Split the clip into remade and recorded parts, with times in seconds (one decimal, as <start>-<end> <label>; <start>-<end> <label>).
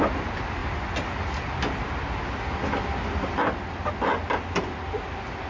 0.0-5.5 recorded